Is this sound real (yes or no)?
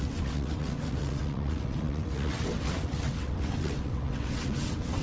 no